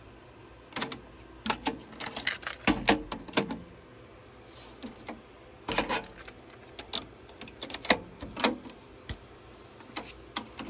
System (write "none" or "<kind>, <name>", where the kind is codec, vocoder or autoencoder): none